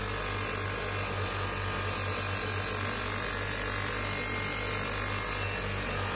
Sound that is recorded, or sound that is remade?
recorded